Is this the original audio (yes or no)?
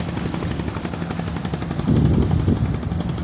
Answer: yes